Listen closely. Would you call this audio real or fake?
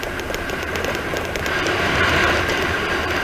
fake